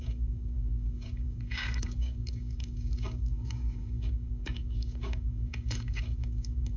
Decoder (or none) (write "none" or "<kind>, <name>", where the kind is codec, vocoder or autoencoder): codec, DAC